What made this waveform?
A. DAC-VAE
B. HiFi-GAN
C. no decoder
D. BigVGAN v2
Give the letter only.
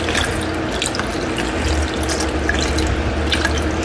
C